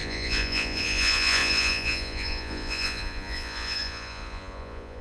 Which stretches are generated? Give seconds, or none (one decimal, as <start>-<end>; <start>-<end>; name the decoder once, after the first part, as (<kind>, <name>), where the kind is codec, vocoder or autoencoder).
0.0-5.0 (vocoder, Vocos)